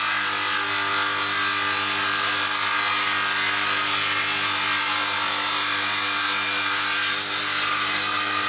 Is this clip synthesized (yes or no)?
no